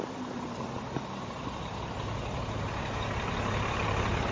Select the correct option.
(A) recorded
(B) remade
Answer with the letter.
A